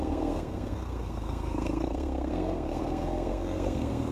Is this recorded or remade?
remade